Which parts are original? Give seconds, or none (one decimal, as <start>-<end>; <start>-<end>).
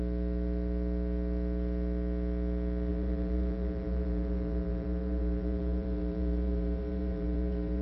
0.0-2.9